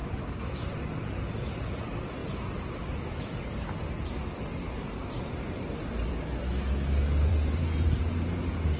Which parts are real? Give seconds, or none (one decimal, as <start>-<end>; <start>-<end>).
0.5-4.5; 6.1-7.3; 8.0-8.8